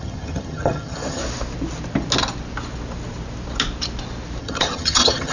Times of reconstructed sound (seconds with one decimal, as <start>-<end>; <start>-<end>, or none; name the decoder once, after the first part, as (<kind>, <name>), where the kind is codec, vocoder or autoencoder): 0.0-1.2 (vocoder, HiFi-GAN); 4.4-5.3